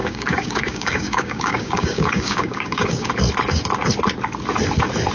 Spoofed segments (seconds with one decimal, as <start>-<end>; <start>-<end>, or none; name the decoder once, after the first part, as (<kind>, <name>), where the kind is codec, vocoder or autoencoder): 0.0-3.1 (codec, DAC)